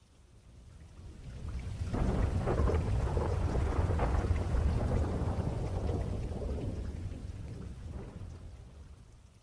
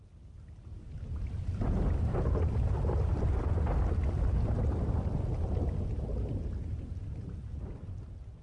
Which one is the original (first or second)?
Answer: second